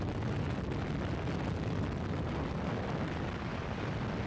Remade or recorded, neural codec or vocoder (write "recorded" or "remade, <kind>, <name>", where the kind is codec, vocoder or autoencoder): recorded